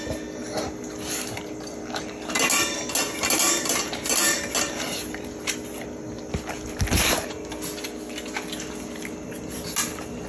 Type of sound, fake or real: real